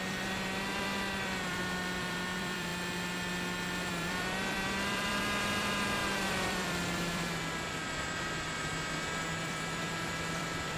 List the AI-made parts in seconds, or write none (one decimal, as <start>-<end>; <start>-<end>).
0.0-2.7; 3.9-8.7; 9.4-10.8